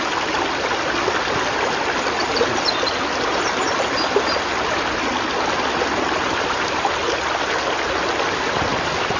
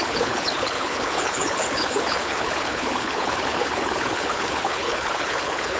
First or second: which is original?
first